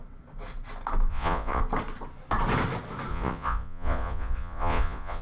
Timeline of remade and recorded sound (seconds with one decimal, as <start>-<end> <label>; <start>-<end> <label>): 0.0-1.1 recorded; 1.1-1.6 remade; 1.6-3.1 recorded; 3.1-5.2 remade